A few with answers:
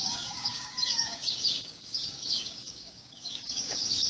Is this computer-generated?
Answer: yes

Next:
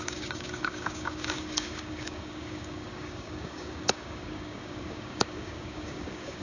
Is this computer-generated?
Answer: yes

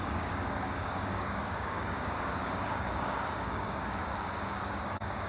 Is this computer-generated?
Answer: yes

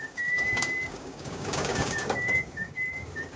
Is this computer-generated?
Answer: yes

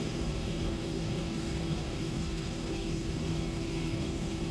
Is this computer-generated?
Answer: yes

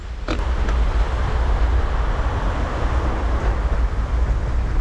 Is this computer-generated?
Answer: no